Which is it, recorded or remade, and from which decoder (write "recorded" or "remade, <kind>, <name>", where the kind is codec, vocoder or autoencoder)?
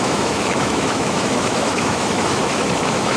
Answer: remade, autoencoder, DAC-VAE